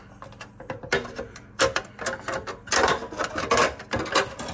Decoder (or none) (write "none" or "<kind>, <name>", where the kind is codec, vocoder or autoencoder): none